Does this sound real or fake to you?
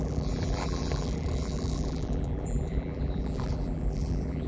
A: fake